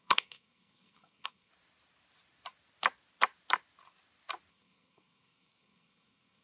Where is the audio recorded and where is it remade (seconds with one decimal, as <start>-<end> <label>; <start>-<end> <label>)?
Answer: 0.0-1.5 remade; 1.5-4.5 recorded; 4.5-6.4 remade